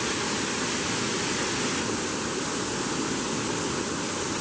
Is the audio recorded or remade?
recorded